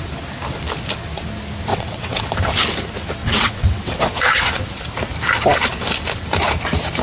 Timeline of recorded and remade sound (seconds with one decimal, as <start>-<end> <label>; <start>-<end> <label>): 0.0-1.7 recorded; 1.7-2.3 remade; 2.3-3.2 recorded; 3.2-4.6 remade; 4.6-7.0 recorded